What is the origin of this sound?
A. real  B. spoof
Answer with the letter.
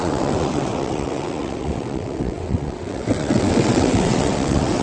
B